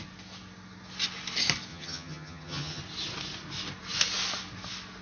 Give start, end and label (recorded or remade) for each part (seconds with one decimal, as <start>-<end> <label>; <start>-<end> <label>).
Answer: 0.0-1.7 recorded; 1.7-2.8 remade; 2.8-5.0 recorded